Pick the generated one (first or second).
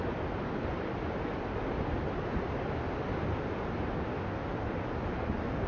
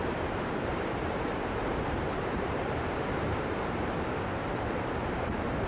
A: second